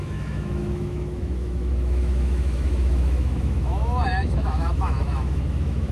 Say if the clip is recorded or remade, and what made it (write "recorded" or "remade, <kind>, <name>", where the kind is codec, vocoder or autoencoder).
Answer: remade, autoencoder, DAC-VAE